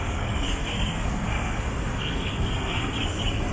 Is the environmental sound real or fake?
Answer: fake